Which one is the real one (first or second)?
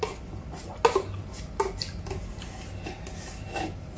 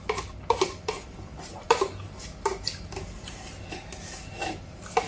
first